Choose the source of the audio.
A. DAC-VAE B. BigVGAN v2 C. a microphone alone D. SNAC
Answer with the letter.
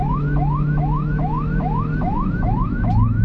A